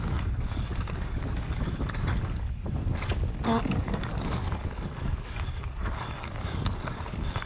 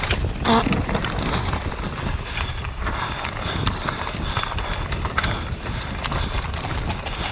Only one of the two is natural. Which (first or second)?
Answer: second